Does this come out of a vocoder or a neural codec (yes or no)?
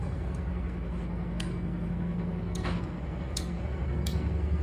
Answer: yes